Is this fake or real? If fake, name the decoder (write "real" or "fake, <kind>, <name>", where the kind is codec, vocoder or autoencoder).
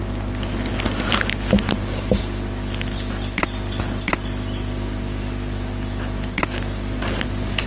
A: real